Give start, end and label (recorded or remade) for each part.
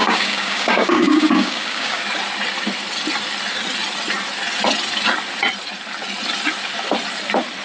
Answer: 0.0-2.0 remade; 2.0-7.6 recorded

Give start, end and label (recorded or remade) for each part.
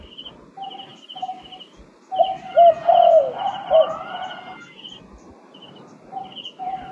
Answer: 0.0-6.9 recorded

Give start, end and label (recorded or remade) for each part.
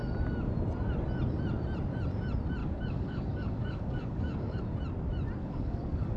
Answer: 0.0-2.6 recorded; 2.6-4.6 remade; 4.6-5.4 recorded; 5.4-6.2 remade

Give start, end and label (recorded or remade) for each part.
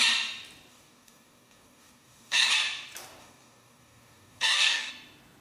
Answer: 0.0-0.7 recorded; 0.7-2.5 remade; 2.5-3.2 recorded; 3.2-4.9 remade; 4.9-5.4 recorded